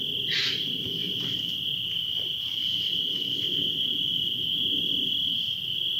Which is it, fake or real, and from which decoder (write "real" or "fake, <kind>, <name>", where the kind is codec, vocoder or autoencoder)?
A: real